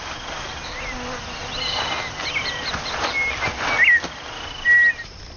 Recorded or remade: recorded